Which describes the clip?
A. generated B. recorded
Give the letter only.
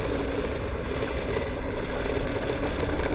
B